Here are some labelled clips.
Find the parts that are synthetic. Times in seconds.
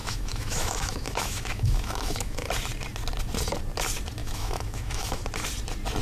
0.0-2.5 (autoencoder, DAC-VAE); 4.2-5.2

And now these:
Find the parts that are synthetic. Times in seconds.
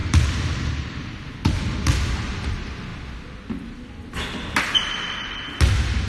0.0-1.3 (vocoder, BigVGAN v2)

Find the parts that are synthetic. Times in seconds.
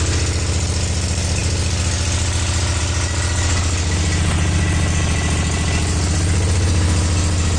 none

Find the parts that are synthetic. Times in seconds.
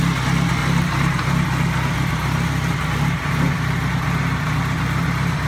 0.6-3.9 (vocoder, BigVGAN v2)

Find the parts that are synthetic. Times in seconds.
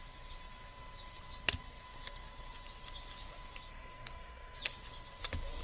3.7-4.6 (codec, SNAC)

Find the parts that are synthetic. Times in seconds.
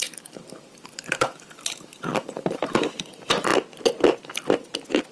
0.0-3.5 (vocoder, BigVGAN v2)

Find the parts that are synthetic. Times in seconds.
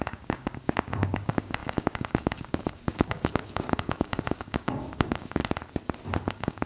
0.0-5.4 (codec, DAC); 6.3-6.7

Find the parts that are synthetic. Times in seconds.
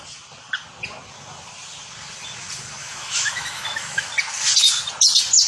2.8-4.1 (autoencoder, DAC-VAE)